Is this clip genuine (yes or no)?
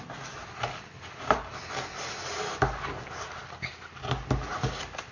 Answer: yes